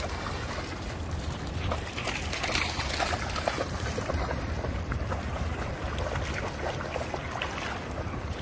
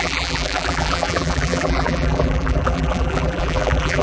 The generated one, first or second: second